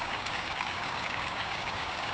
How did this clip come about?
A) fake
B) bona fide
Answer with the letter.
A